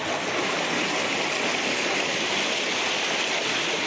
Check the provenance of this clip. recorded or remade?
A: recorded